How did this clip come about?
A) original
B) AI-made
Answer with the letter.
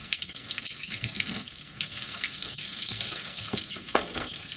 B